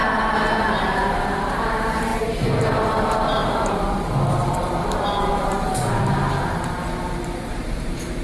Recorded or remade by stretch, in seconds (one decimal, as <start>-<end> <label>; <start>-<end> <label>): 0.0-0.6 recorded; 0.6-3.4 remade; 3.4-7.5 recorded; 7.5-8.2 remade